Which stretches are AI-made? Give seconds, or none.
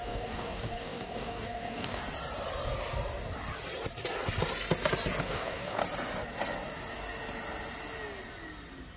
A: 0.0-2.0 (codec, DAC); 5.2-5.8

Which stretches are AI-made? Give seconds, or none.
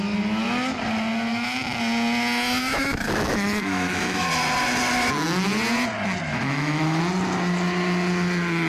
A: 1.3-1.8 (autoencoder, DAC-VAE); 2.6-4.3; 6.3-7.0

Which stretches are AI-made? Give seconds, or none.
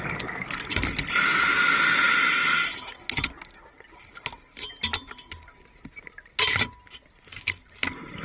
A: none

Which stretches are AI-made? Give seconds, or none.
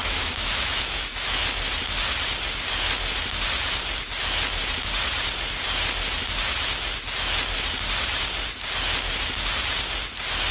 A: 0.0-1.4 (autoencoder, DAC-VAE)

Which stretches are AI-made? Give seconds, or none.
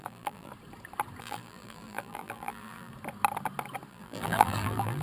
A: 0.0-0.5 (vocoder, BigVGAN v2); 1.2-2.9; 3.9-5.0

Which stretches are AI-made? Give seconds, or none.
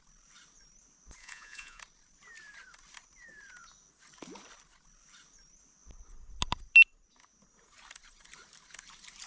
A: 1.2-1.8 (vocoder, Vocos)